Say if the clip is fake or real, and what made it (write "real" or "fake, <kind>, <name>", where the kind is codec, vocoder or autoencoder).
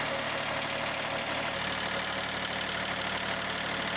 real